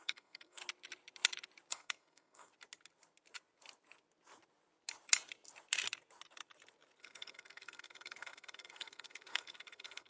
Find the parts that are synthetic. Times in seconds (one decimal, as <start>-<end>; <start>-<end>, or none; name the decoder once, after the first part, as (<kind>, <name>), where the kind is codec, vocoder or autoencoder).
0.0-0.6 (codec, SNAC); 1.7-2.5; 7.0-10.1